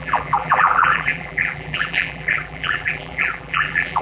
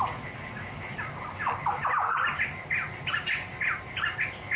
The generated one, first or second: first